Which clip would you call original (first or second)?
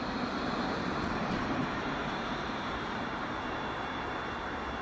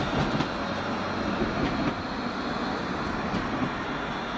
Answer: second